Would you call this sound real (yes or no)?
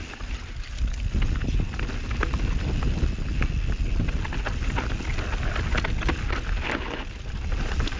yes